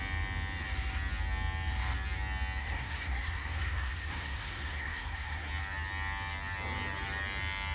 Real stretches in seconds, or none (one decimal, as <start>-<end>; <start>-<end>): 0.0-2.6; 5.5-7.7